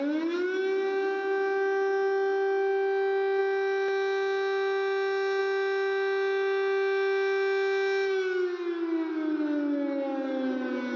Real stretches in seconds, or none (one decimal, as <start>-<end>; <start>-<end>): 0.0-11.0